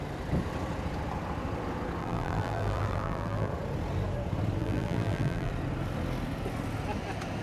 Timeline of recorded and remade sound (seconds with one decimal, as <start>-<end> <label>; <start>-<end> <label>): 0.0-2.0 recorded; 2.0-3.5 remade; 3.5-4.6 recorded; 4.6-5.5 remade; 5.5-7.4 recorded